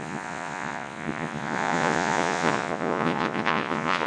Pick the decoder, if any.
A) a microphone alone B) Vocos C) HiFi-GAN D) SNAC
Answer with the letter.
B